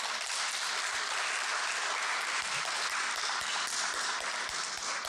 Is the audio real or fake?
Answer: real